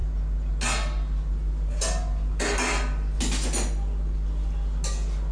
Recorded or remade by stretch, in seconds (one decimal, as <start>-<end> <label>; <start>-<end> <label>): 0.0-5.3 recorded